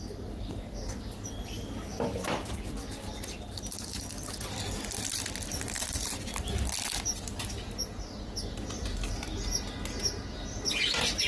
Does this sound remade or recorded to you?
recorded